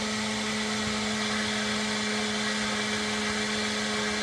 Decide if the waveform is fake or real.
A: real